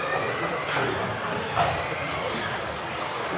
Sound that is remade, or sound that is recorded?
recorded